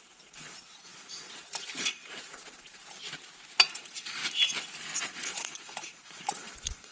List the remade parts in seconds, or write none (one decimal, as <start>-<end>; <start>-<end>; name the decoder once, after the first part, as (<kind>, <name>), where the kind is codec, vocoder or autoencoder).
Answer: 0.0-2.8 (vocoder, Vocos); 3.7-4.2; 5.0-6.9